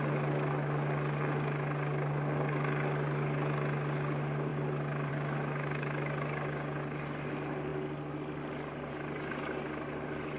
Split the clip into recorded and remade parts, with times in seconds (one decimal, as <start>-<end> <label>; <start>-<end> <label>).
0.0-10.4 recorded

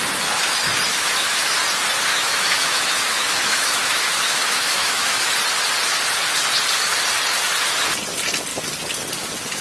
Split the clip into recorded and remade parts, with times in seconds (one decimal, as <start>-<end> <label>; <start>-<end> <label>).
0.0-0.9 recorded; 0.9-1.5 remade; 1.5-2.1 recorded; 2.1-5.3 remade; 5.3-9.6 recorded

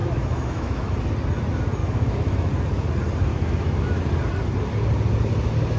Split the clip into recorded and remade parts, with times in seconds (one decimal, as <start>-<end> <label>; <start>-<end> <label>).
0.0-0.9 remade; 0.9-1.8 recorded; 1.8-2.5 remade; 2.5-3.3 recorded; 3.3-4.0 remade; 4.0-5.8 recorded

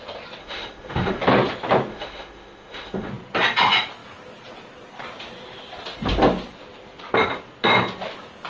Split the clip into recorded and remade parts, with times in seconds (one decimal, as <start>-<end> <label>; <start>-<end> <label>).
0.0-0.4 recorded; 0.4-1.2 remade; 1.2-1.9 recorded; 1.9-3.1 remade; 3.1-8.5 recorded